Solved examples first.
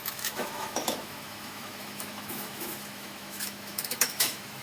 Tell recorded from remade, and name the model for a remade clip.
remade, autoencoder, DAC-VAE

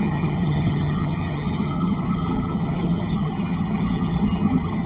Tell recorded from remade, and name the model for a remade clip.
remade, vocoder, HiFi-GAN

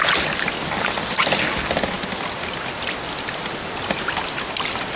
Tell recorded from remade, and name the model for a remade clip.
recorded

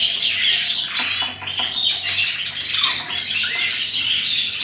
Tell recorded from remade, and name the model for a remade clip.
recorded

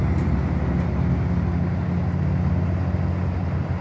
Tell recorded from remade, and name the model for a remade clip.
recorded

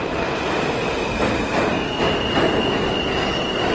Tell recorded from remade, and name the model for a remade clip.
recorded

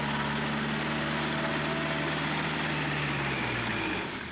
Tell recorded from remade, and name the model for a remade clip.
recorded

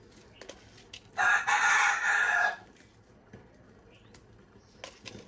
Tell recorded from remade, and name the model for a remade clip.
recorded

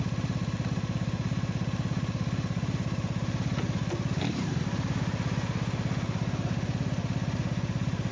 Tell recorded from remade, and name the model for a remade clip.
recorded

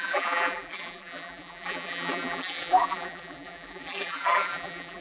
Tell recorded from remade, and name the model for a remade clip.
remade, vocoder, BigVGAN v2